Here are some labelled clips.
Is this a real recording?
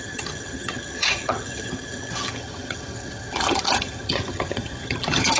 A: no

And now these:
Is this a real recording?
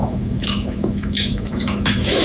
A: no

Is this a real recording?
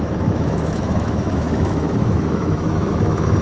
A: no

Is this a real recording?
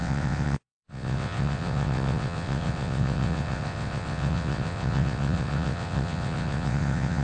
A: no